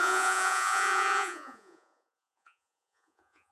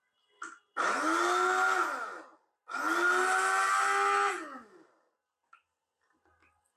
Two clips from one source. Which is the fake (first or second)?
first